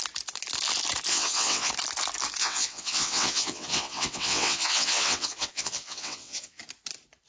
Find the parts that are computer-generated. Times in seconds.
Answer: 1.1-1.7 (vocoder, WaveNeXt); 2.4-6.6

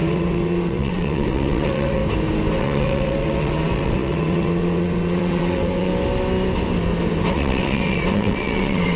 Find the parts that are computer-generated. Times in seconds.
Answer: 0.0-2.0 (vocoder, WaveNeXt); 2.6-5.9; 7.3-9.0

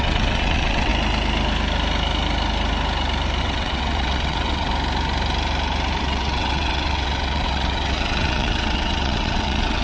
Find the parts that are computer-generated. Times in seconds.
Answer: 0.0-0.9 (vocoder, WaveNeXt); 3.4-4.7; 6.0-9.8

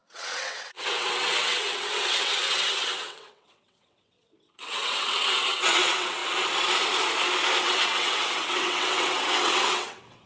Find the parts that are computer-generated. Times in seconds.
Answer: 0.0-6.2 (vocoder, WaveNeXt); 7.6-10.3

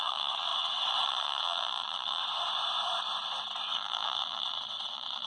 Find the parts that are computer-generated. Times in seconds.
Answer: 0.0-2.2 (vocoder, WaveNeXt); 3.7-5.3

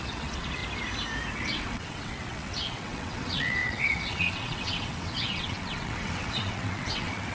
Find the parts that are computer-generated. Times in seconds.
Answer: 0.0-0.6 (vocoder, WaveNeXt); 1.3-7.3

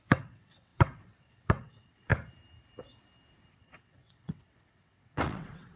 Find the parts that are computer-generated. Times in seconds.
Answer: 0.0-2.1 (vocoder, WaveNeXt); 3.5-5.8

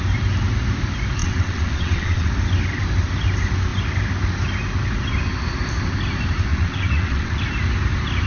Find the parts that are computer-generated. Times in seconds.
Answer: 1.2-2.3 (vocoder, WaveNeXt); 6.5-7.4